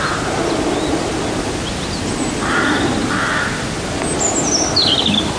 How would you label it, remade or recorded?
recorded